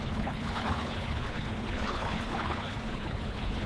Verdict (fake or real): fake